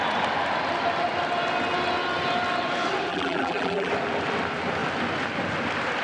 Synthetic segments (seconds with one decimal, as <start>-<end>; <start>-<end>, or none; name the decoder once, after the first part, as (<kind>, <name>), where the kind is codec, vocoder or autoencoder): 3.1-3.9 (vocoder, BigVGAN v2)